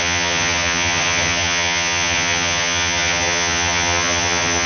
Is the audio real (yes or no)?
no